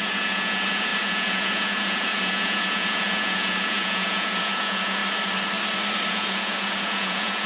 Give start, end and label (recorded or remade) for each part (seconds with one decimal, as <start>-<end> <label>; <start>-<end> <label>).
0.0-5.0 remade; 5.0-6.1 recorded; 6.1-7.5 remade